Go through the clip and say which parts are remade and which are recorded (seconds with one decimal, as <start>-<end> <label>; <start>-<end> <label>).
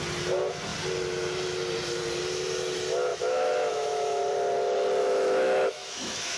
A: 0.0-3.1 recorded; 3.1-4.2 remade; 4.2-5.0 recorded; 5.0-6.4 remade